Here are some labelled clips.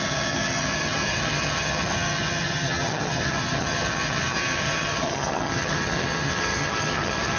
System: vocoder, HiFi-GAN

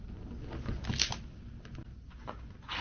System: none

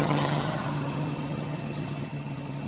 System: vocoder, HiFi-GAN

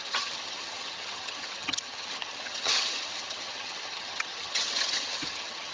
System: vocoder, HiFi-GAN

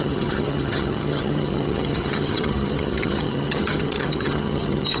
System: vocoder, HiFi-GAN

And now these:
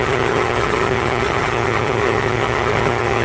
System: vocoder, HiFi-GAN